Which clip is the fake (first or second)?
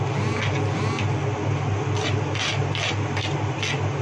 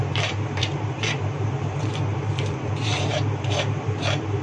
second